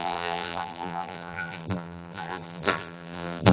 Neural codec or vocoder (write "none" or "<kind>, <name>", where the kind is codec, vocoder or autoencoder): vocoder, BigVGAN v2